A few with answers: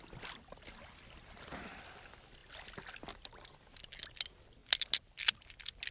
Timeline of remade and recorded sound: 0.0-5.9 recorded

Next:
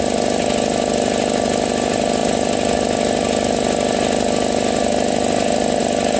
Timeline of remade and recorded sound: 0.0-6.2 recorded

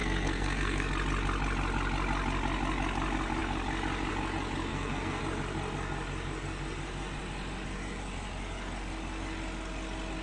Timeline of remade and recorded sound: 0.0-0.9 remade; 0.9-4.7 recorded; 4.7-5.2 remade; 5.2-10.2 recorded

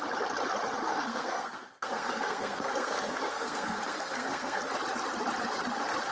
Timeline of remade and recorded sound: 0.0-0.9 recorded; 0.9-4.6 remade; 4.6-6.1 recorded